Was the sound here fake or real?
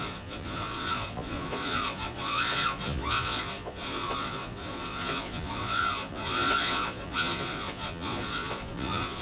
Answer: fake